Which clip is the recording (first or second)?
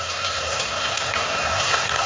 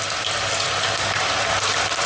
second